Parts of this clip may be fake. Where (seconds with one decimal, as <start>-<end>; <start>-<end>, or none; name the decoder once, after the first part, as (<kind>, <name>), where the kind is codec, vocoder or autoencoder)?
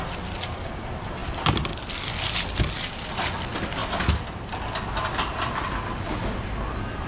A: none